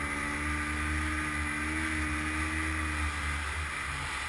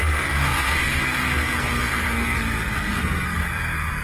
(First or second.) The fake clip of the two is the second